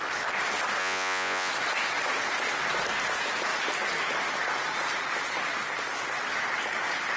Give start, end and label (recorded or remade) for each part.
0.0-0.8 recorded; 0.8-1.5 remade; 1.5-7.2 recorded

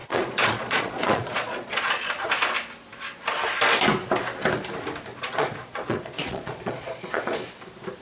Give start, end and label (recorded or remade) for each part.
0.0-2.3 remade; 2.3-5.1 recorded; 5.1-7.4 remade; 7.4-8.0 recorded

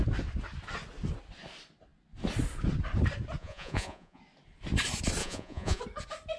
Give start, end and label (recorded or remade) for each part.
0.0-3.4 recorded; 3.4-4.2 remade; 4.2-5.2 recorded; 5.2-5.8 remade; 5.8-6.4 recorded

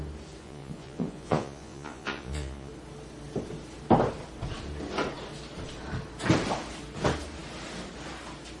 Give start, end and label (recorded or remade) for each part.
0.0-0.4 recorded; 0.4-2.7 remade; 2.7-8.6 recorded

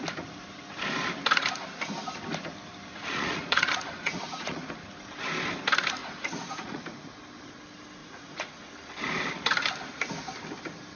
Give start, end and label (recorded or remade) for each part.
0.0-2.9 recorded; 2.9-4.7 remade; 4.7-6.0 recorded; 6.0-6.8 remade; 6.8-8.0 recorded; 8.0-8.7 remade; 8.7-11.0 recorded